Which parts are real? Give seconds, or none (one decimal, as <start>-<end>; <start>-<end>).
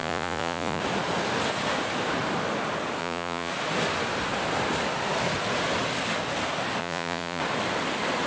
0.8-3.0; 3.5-6.8; 7.4-8.3